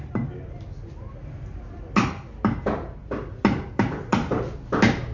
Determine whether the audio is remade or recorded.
recorded